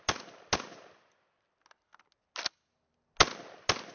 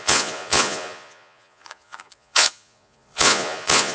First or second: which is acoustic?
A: first